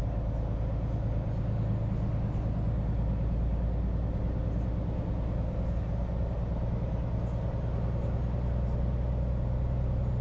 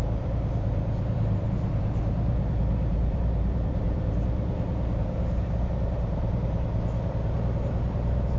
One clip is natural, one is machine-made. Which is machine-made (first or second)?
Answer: second